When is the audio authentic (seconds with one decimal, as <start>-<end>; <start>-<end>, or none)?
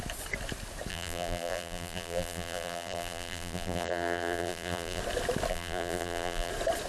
0.0-0.9; 5.0-5.5; 6.5-6.9